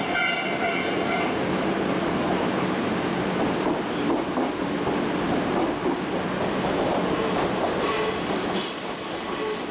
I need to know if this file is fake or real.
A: real